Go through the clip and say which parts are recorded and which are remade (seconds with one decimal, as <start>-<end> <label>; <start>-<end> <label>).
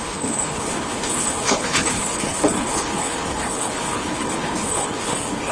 0.0-5.5 remade